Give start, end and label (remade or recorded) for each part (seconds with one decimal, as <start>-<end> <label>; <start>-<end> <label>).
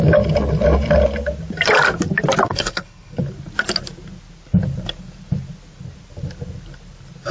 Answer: 0.0-2.5 recorded; 2.5-3.2 remade; 3.2-7.3 recorded